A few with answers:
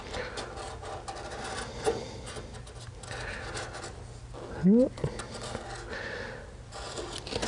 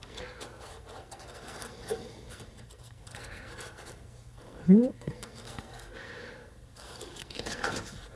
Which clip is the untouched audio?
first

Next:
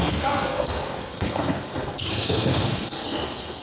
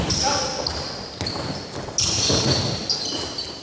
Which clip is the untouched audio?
second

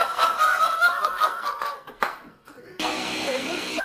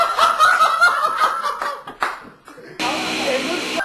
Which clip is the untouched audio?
second